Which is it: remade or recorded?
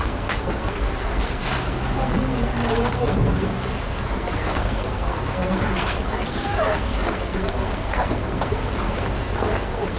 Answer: remade